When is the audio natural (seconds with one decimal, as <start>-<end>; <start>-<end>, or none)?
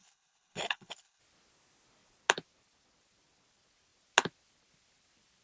1.2-5.4